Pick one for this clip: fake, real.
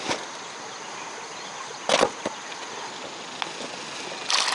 real